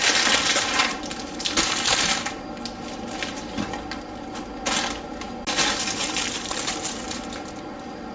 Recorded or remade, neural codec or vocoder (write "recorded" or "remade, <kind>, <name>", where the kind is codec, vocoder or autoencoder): recorded